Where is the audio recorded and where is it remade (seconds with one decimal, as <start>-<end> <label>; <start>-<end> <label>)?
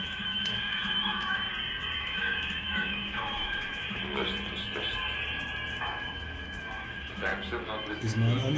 0.0-1.5 remade; 1.5-2.0 recorded; 2.0-4.0 remade; 4.0-5.7 recorded; 5.7-7.3 remade; 7.3-7.9 recorded; 7.9-8.6 remade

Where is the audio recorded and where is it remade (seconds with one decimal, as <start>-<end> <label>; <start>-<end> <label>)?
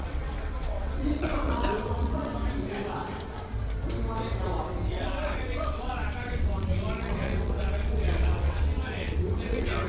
0.0-2.3 remade; 2.3-4.9 recorded; 4.9-9.9 remade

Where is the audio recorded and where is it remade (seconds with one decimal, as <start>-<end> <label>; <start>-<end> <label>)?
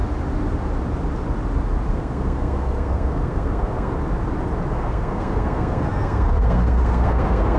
0.0-1.9 recorded; 1.9-3.9 remade; 3.9-4.7 recorded; 4.7-7.6 remade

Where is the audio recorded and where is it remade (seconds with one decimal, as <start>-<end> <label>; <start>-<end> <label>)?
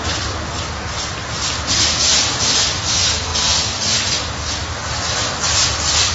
0.0-6.1 recorded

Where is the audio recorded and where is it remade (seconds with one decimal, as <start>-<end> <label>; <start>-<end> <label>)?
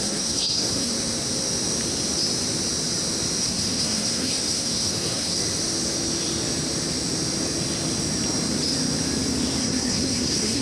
0.0-0.9 remade; 0.9-3.4 recorded; 3.4-5.4 remade; 5.4-9.6 recorded; 9.6-10.6 remade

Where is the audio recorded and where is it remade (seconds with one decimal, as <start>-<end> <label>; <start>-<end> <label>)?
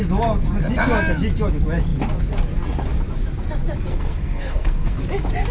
0.0-3.9 recorded; 3.9-5.0 remade; 5.0-5.5 recorded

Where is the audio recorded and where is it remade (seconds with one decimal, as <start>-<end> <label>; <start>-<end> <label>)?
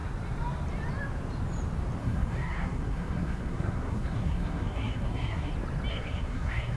0.0-2.0 recorded; 2.0-5.5 remade; 5.5-5.9 recorded; 5.9-6.8 remade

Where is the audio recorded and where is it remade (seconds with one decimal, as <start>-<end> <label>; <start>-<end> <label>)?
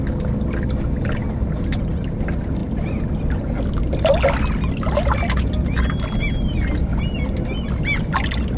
0.0-2.6 recorded; 2.6-3.2 remade; 3.2-8.6 recorded